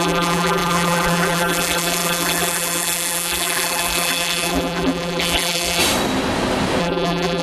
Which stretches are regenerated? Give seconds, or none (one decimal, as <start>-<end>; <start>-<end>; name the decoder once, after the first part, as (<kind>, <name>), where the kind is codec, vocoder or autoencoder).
0.0-5.8 (vocoder, BigVGAN v2); 6.8-7.4